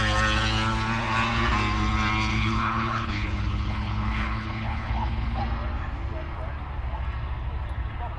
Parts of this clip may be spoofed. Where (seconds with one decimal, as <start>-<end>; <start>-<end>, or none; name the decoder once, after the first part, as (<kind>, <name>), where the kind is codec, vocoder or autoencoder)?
2.3-5.4 (codec, HILCodec)